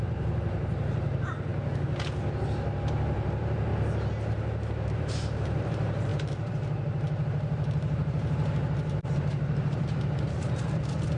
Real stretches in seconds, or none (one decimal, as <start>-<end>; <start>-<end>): 1.5-2.4; 3.7-4.9